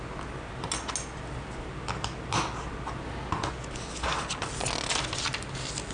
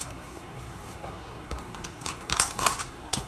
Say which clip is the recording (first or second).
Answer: first